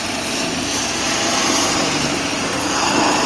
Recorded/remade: remade